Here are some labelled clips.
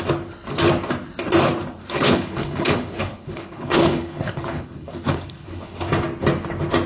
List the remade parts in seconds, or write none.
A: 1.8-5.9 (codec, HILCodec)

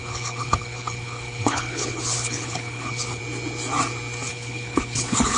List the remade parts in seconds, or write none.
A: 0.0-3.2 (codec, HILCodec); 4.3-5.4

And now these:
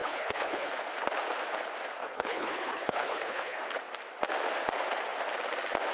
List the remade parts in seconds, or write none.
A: 0.0-0.7 (codec, HILCodec); 2.0-3.6

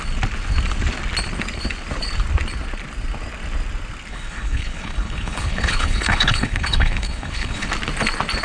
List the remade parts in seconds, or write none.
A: 4.1-7.7 (codec, HILCodec)

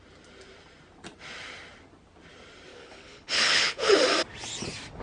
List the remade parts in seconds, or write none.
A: 2.7-4.0 (codec, HILCodec)

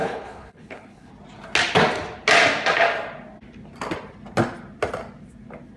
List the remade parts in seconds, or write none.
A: 0.0-1.1 (codec, HILCodec)

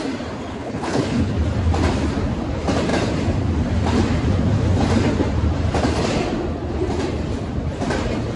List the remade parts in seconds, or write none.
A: 0.5-1.3 (codec, HILCodec)

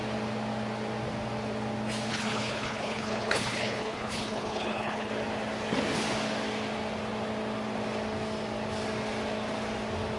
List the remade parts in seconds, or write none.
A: 2.1-5.1 (codec, HILCodec)